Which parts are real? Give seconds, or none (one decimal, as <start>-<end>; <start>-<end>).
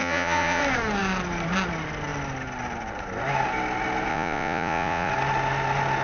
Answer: 0.6-4.1; 5.1-6.0